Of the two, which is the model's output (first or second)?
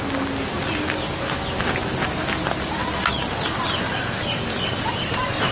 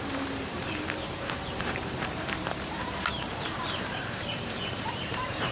second